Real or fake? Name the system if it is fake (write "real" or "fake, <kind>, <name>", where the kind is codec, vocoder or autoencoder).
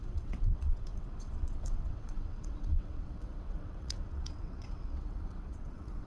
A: fake, vocoder, WaveNeXt